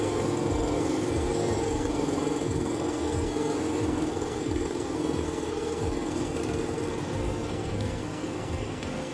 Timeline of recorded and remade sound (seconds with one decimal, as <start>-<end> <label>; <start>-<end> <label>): 0.0-9.1 remade